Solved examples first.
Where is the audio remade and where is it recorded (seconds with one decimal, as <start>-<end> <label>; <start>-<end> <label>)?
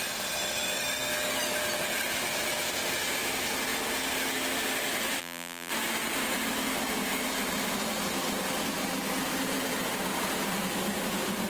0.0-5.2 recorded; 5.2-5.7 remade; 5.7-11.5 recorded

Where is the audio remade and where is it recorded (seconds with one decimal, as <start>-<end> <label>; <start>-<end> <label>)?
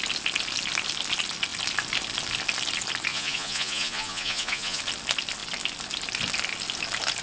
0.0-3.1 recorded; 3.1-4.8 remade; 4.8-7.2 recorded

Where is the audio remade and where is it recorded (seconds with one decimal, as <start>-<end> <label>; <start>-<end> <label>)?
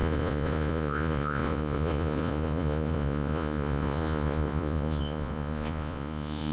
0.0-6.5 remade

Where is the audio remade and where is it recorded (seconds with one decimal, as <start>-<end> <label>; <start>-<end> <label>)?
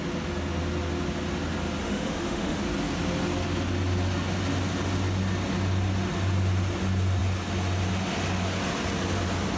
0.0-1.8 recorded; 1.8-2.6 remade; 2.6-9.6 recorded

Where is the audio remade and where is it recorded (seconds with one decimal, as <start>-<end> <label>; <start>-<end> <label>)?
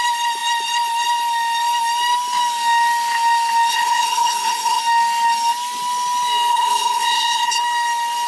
0.0-3.7 recorded; 3.7-4.8 remade; 4.8-6.5 recorded; 6.5-7.6 remade; 7.6-8.3 recorded